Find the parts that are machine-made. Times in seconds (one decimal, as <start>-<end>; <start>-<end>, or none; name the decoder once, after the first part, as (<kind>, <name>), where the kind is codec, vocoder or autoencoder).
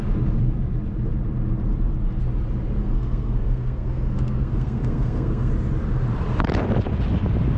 2.8-5.5 (codec, SNAC)